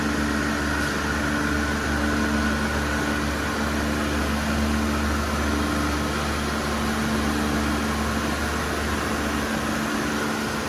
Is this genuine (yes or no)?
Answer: yes